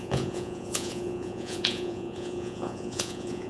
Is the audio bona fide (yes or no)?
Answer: no